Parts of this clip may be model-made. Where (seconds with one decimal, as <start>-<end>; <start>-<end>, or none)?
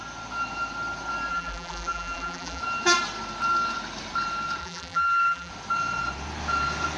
1.3-2.6; 4.6-5.5